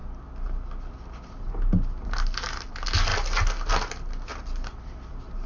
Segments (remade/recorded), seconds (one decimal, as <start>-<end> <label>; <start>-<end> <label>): 0.0-5.5 recorded